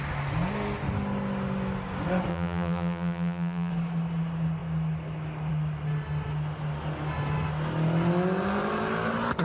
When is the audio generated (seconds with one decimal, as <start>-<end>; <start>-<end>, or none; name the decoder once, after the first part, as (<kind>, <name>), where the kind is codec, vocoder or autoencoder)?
2.3-3.7 (vocoder, BigVGAN v2)